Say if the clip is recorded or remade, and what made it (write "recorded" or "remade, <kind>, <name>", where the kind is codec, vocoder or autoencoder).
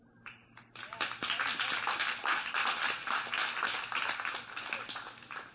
recorded